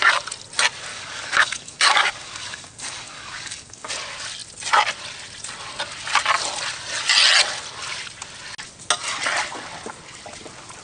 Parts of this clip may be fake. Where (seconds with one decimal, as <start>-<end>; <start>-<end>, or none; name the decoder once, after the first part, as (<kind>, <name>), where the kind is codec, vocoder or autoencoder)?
0.9-3.9 (codec, DAC)